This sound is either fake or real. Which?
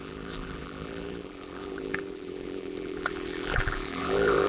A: fake